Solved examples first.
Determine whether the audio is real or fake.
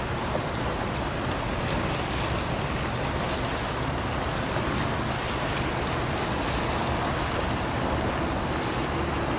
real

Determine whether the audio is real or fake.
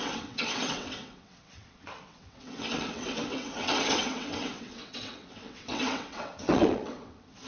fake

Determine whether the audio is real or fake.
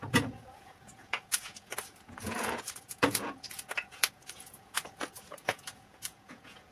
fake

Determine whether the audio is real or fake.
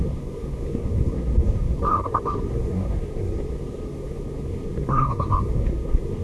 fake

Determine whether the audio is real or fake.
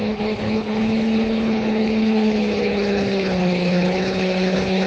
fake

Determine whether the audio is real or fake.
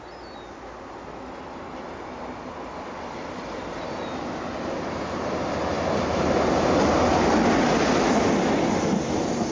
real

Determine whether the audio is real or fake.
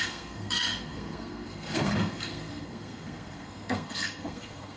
fake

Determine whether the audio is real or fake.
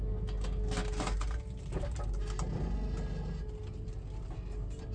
real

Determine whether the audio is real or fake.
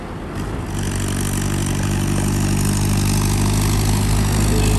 real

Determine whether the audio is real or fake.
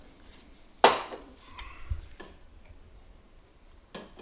real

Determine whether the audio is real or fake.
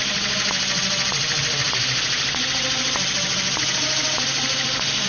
real